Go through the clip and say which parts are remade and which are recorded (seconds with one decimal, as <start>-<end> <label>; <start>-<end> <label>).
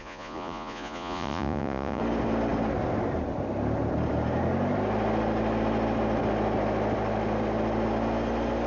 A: 0.0-2.0 remade; 2.0-8.7 recorded